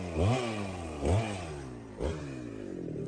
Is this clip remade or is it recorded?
recorded